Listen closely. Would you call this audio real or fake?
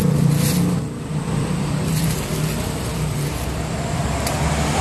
fake